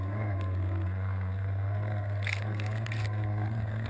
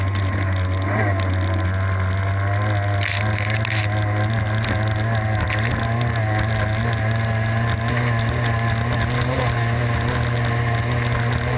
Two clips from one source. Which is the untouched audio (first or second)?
second